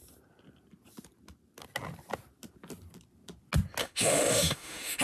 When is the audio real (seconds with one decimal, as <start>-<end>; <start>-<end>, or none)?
0.0-3.8